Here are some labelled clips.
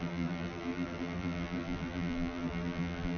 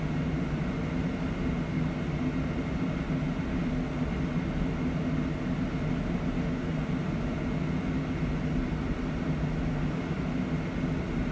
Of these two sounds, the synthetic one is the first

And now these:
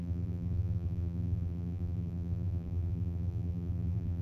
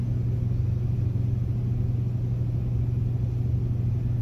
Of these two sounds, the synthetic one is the first